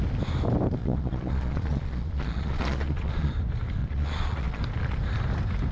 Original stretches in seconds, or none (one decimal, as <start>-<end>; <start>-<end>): 0.0-0.8; 3.3-3.8; 4.6-5.7